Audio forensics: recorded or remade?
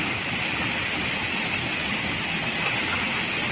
recorded